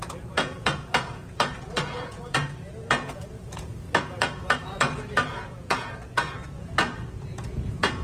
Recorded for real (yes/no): no